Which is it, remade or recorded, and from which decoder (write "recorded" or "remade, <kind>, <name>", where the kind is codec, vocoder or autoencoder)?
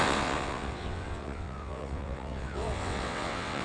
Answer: remade, vocoder, WaveNeXt